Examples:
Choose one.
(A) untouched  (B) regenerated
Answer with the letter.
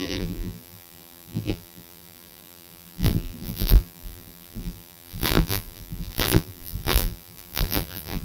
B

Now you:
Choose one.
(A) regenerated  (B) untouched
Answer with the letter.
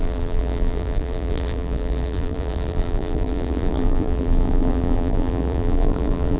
A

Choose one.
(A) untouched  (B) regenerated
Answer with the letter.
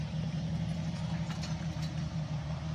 B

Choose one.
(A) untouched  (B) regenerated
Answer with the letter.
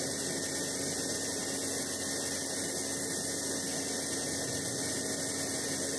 A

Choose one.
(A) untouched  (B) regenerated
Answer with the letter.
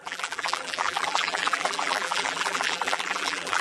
B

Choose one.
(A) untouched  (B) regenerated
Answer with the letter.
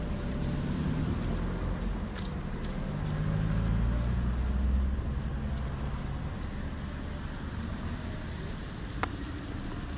A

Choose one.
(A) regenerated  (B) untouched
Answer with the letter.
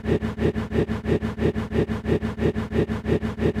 B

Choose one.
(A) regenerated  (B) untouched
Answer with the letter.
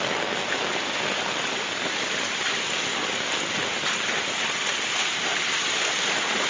B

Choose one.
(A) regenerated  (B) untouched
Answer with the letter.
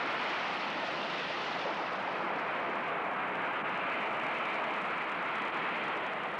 B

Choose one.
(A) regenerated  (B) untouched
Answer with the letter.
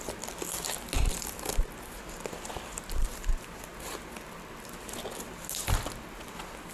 B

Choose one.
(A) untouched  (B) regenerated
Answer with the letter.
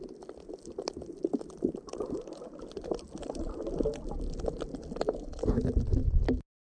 A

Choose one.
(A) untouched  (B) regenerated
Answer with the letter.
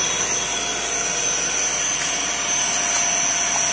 A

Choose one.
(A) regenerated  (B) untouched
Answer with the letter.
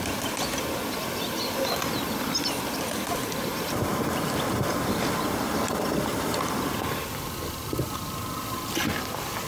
B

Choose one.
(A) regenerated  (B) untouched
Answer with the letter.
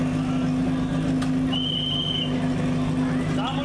B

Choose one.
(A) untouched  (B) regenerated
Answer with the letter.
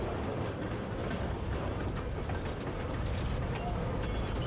A